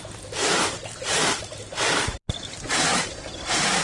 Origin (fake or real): real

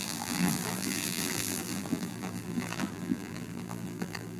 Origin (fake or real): fake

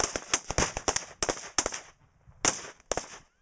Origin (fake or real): real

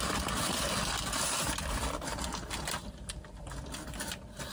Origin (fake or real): real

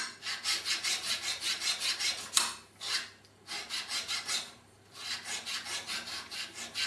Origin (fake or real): real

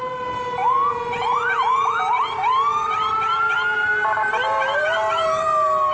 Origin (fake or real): fake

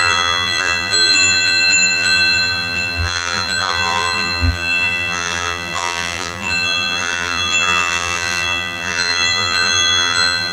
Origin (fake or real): fake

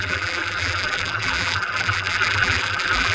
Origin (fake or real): fake